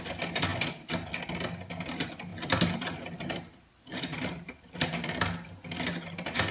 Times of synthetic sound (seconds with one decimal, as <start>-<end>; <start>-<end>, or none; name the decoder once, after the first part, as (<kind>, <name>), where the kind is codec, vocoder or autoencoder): none